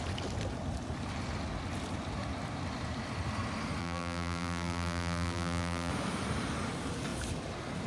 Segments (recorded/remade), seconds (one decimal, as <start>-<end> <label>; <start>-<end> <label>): 0.0-3.8 recorded; 3.8-5.9 remade; 5.9-7.9 recorded